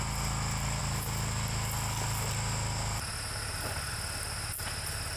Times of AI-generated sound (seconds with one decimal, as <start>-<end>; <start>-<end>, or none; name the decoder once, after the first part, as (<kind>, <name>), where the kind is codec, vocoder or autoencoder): none